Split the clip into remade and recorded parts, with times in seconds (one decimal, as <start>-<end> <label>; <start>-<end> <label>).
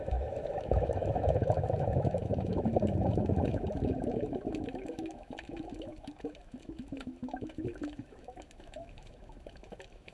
0.0-10.1 remade